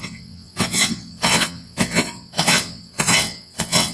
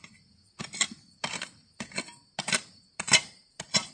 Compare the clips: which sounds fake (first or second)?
first